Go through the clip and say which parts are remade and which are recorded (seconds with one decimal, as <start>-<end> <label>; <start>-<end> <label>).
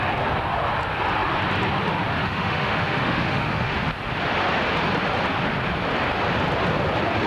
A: 0.0-2.2 recorded; 2.2-3.8 remade; 3.8-7.3 recorded